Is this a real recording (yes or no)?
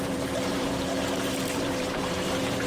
no